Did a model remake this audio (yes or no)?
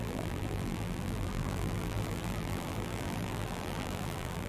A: yes